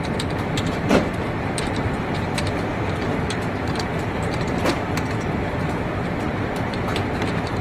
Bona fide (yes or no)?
no